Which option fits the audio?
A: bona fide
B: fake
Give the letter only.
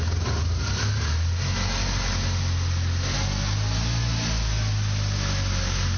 A